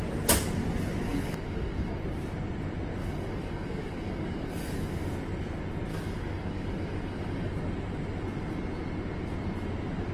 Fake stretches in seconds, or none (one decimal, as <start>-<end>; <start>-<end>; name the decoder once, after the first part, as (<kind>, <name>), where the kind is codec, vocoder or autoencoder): 1.1-1.9 (codec, DAC); 3.0-5.1; 5.9-7.5